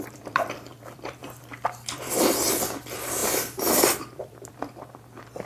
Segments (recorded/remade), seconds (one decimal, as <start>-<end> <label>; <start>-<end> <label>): 0.0-5.5 remade